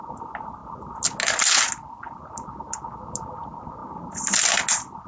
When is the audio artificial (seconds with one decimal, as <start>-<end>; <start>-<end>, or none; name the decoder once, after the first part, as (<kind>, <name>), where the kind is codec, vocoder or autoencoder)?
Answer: none

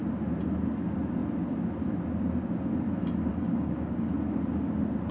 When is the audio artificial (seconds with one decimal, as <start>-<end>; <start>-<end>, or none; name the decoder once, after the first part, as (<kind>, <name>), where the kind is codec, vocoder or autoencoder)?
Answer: 3.3-4.1 (codec, DAC)

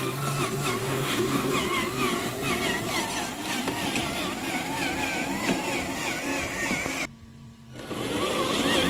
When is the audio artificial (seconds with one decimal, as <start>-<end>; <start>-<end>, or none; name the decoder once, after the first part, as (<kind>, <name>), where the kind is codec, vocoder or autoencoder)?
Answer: 0.8-1.5 (codec, DAC)

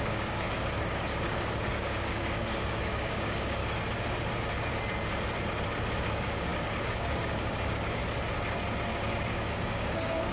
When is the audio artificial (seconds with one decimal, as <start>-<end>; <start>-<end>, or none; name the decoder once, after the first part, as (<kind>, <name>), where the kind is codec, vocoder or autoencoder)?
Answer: 0.0-3.6 (codec, DAC); 6.0-8.0; 8.9-10.3

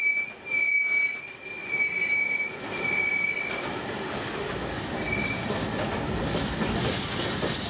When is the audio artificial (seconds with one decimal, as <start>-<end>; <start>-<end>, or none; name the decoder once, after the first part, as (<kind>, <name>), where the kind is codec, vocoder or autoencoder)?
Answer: none

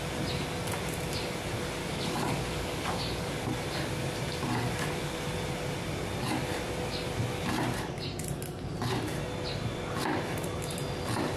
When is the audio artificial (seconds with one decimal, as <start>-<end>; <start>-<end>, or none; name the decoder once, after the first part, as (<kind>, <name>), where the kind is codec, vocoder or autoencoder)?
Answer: 1.8-3.3 (codec, DAC)